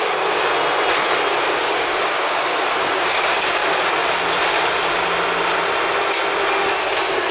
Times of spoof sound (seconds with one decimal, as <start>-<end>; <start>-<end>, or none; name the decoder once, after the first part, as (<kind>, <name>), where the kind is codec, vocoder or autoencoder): 0.0-0.5 (codec, DAC); 1.3-3.6; 6.8-7.3